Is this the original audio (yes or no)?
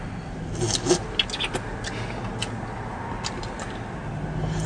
yes